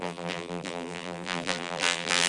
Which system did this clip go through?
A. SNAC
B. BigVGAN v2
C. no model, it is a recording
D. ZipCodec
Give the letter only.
B